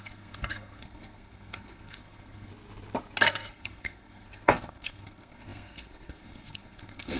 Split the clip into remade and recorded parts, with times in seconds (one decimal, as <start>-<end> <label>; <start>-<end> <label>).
0.0-2.5 remade; 2.5-3.2 recorded; 3.2-7.2 remade